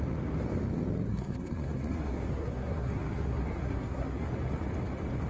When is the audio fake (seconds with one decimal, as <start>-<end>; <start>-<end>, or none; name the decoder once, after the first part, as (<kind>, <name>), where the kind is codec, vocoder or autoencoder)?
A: 1.1-4.3 (codec, SNAC)